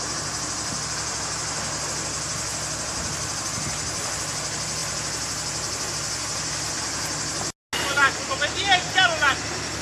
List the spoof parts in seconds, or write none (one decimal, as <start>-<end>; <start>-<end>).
none